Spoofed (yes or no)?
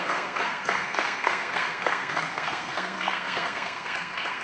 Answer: yes